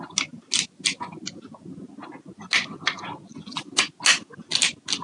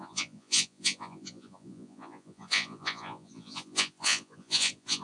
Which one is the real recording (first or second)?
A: first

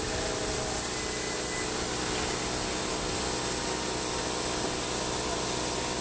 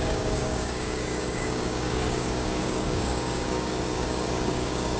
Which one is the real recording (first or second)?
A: first